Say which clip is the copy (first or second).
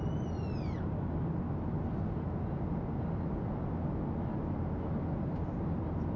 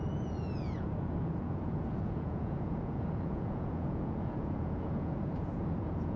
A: second